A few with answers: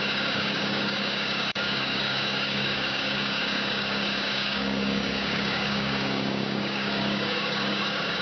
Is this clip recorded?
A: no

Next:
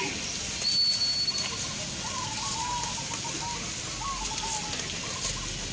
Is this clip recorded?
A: yes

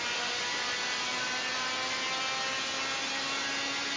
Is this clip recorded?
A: yes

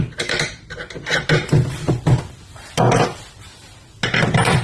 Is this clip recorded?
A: yes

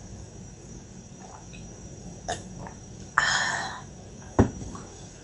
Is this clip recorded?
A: no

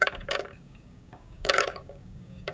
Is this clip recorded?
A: no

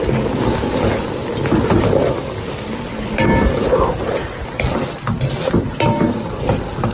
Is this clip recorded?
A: yes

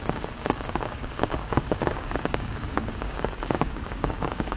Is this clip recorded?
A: no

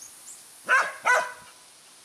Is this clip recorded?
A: yes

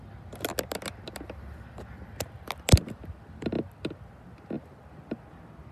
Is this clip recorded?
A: yes